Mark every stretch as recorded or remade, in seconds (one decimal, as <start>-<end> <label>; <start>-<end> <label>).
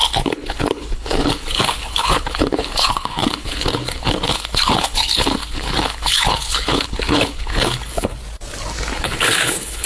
0.0-8.2 remade; 8.2-9.0 recorded; 9.0-9.9 remade